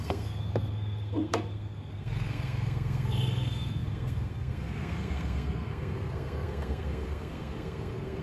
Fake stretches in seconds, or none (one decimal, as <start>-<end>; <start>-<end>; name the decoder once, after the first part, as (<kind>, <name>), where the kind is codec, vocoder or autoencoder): 0.0-8.2 (codec, SNAC)